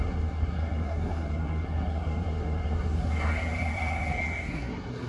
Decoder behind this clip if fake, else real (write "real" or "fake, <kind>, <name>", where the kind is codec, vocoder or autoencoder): fake, codec, SNAC